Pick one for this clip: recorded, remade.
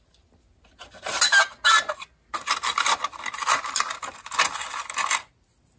recorded